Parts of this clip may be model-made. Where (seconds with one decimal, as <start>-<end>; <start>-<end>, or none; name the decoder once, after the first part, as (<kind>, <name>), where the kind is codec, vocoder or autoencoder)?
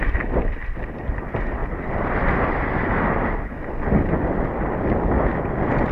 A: 1.6-3.5 (vocoder, BigVGAN v2)